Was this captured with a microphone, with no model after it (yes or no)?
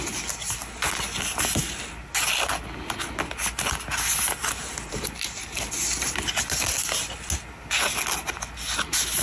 yes